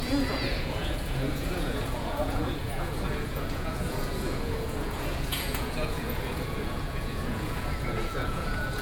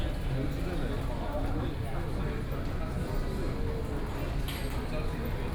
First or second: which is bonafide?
second